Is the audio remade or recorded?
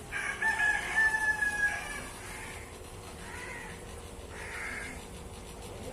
recorded